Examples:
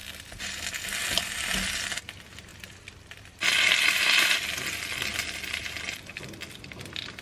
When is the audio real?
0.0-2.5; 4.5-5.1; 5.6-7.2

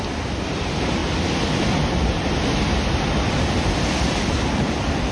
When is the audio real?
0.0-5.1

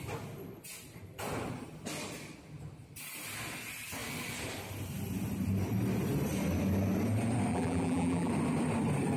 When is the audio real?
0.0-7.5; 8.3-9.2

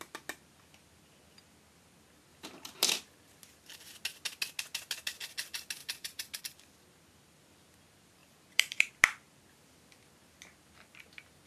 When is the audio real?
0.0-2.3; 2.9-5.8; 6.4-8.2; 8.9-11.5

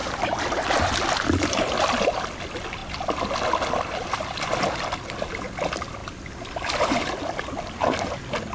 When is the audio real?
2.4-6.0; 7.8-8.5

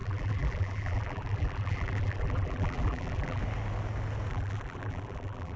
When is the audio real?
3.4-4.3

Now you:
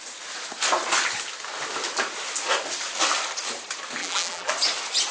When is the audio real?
0.0-4.0; 4.5-5.1